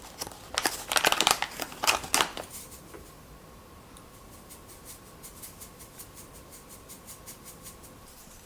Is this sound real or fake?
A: real